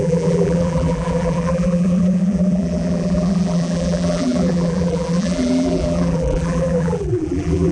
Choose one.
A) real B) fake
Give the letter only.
B